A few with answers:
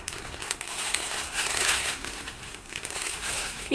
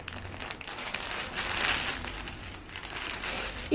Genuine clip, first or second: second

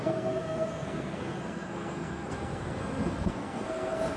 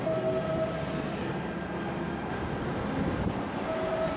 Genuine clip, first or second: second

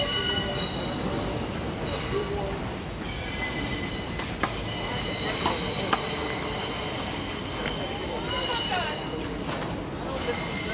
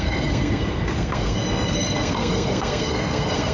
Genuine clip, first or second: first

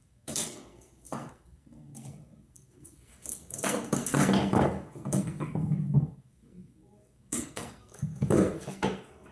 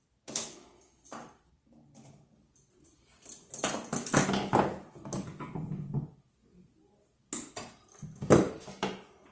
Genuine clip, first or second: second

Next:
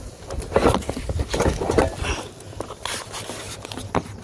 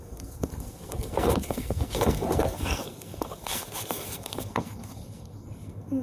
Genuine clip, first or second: first